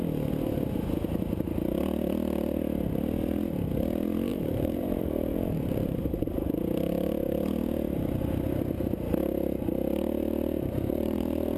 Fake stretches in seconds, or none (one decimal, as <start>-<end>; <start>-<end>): 4.3-6.3; 9.2-11.6